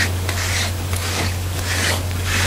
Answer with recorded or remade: remade